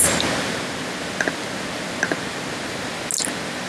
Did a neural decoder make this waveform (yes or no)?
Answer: no